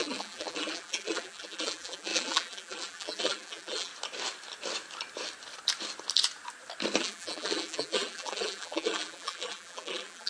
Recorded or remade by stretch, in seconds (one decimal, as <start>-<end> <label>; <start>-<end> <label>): 0.0-3.9 remade; 3.9-7.0 recorded; 7.0-10.3 remade